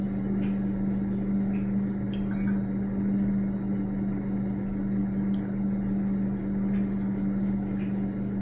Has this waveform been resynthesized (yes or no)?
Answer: no